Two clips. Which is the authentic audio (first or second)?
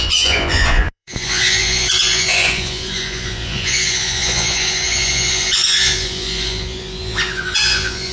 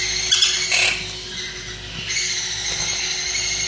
second